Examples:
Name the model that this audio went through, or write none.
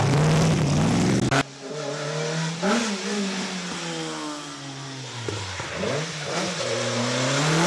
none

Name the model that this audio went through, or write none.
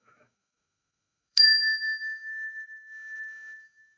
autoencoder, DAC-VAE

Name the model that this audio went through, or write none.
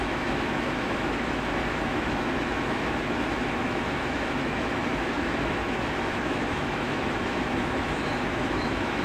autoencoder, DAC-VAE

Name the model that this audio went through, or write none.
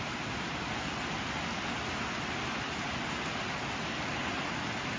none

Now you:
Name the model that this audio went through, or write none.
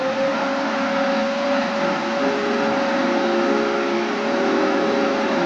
none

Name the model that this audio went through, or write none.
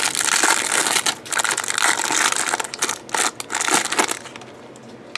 none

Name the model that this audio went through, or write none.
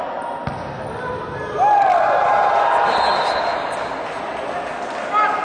none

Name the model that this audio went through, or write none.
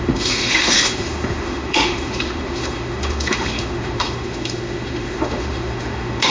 autoencoder, DAC-VAE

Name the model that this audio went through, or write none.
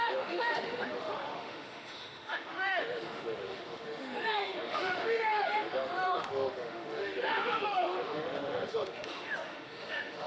autoencoder, DAC-VAE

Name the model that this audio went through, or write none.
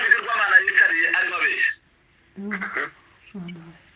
none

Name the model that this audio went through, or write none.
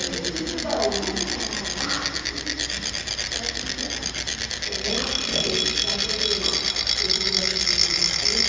none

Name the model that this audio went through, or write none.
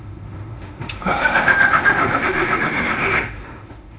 autoencoder, DAC-VAE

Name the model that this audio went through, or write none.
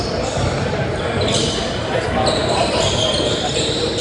none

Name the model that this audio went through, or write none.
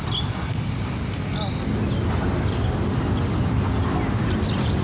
none